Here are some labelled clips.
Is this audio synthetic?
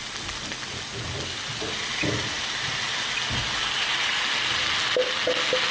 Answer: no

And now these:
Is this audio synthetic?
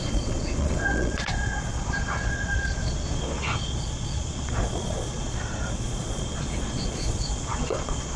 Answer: yes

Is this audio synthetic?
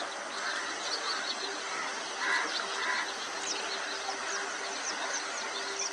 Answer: no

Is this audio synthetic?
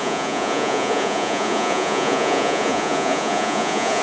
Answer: yes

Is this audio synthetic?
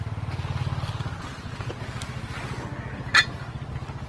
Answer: no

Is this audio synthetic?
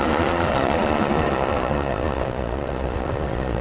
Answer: yes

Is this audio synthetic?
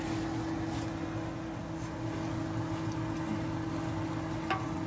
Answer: no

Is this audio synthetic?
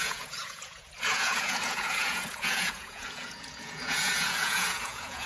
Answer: yes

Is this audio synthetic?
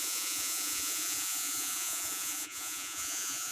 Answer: yes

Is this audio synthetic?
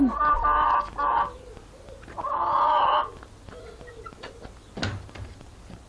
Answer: no